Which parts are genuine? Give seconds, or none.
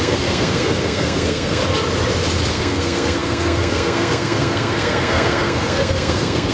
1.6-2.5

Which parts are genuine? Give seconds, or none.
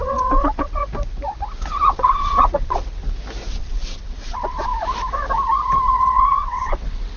0.8-1.7; 3.0-3.5; 4.7-5.9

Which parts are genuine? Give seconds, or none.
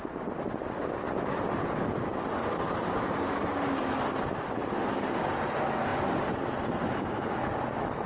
0.0-8.1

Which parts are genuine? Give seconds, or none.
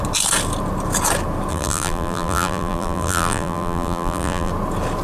0.0-1.5; 4.5-5.0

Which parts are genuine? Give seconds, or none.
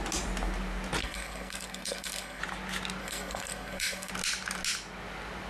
0.0-1.0; 2.4-3.0; 4.1-5.5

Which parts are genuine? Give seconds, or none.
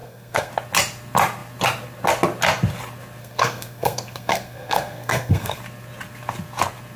0.5-3.2; 5.6-7.0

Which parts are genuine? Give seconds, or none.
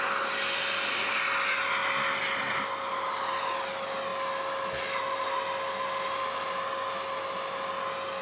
0.0-8.2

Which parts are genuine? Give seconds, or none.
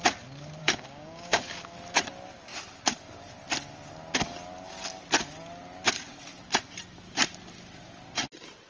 0.0-0.6; 1.4-8.7